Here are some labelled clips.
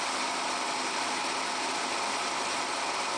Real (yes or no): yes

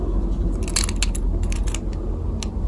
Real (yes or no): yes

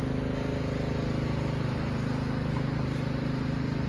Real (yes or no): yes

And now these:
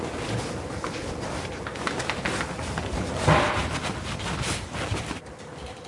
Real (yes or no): yes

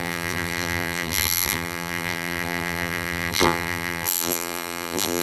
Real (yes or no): no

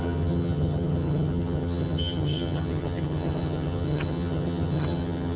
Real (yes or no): no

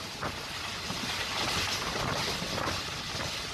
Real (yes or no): yes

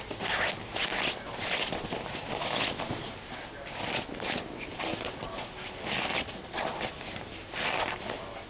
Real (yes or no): no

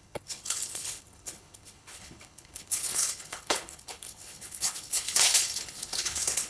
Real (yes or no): no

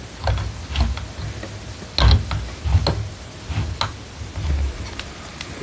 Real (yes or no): yes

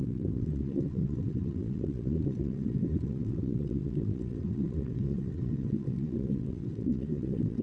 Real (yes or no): no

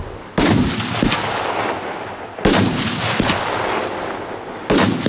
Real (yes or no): yes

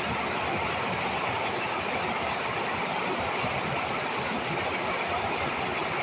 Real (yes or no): yes